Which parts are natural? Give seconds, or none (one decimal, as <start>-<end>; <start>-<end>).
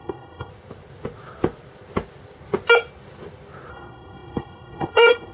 0.5-3.7